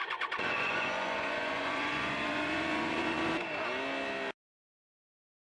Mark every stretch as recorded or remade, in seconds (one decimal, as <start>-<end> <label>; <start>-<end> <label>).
0.0-3.3 remade; 3.3-5.5 recorded